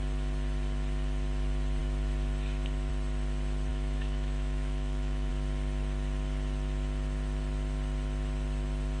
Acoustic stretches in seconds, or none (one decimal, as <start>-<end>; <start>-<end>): 0.0-3.7; 5.3-9.0